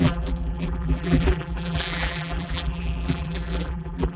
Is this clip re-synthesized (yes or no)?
yes